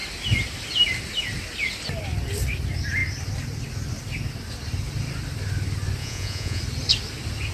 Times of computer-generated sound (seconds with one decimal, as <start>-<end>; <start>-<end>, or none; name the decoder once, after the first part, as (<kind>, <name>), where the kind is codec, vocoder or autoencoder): 6.0-6.6 (vocoder, Vocos)